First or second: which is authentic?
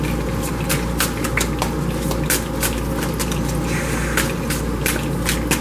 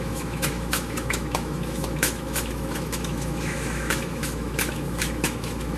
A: first